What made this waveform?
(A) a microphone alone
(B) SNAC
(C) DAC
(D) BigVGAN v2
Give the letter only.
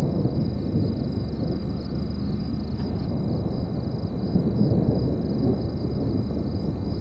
A